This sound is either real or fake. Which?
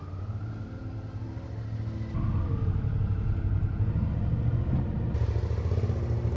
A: real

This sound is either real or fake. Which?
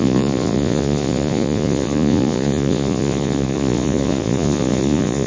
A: fake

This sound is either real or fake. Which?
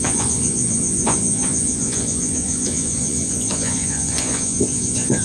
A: fake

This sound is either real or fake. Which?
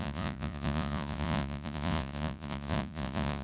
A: fake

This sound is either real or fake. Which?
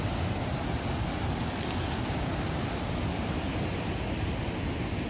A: real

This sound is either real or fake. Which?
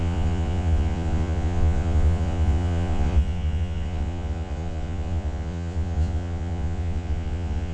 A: fake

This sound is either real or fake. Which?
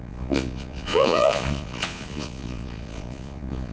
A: fake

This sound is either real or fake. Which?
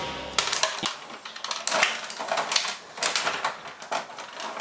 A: real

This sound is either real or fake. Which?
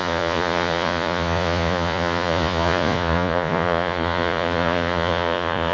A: fake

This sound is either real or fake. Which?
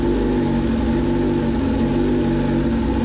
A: real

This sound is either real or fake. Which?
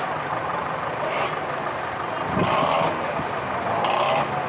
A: real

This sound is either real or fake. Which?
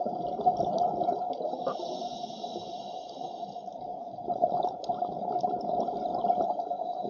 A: real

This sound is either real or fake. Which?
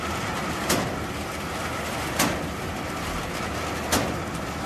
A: real